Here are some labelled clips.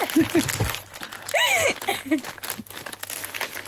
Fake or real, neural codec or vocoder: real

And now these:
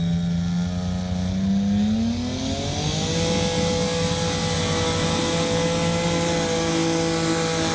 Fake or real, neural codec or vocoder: real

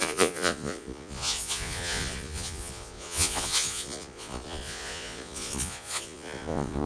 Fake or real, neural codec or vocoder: fake, vocoder, Vocos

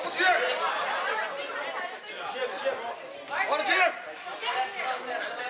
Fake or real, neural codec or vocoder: real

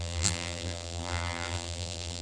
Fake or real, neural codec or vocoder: fake, vocoder, BigVGAN v2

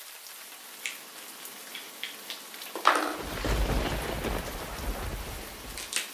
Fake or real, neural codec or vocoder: real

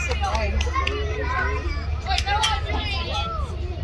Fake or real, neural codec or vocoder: real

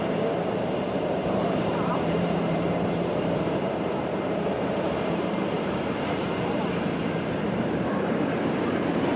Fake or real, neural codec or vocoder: fake, vocoder, BigVGAN v2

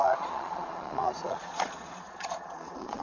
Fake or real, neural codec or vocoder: fake, vocoder, Vocos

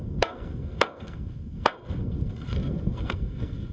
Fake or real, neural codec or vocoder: fake, codec, SNAC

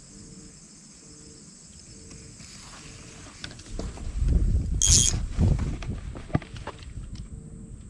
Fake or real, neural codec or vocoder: real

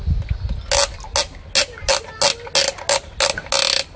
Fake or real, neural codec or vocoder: real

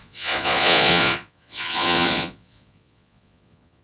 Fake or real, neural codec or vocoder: fake, vocoder, Vocos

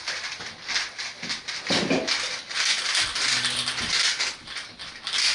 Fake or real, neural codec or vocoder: real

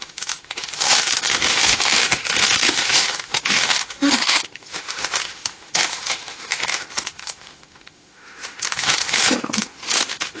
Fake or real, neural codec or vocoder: fake, autoencoder, DAC-VAE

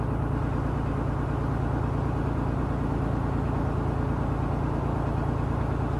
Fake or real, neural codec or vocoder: real